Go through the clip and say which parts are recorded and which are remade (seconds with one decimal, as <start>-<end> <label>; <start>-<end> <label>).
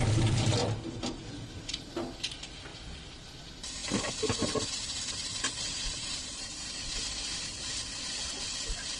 0.0-5.2 recorded; 5.2-6.5 remade; 6.5-9.0 recorded